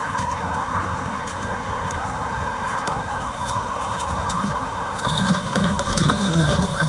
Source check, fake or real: fake